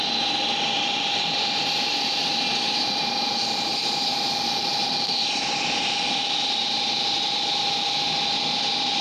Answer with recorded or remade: remade